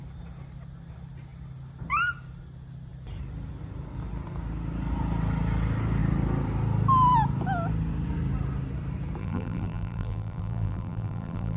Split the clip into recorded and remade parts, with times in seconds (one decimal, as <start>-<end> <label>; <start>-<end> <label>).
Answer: 0.0-9.2 recorded; 9.2-11.6 remade